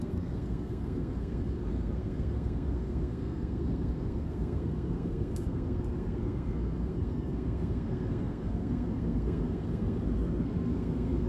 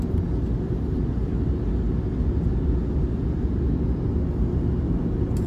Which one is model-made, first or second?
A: first